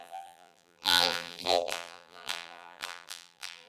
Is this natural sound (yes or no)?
no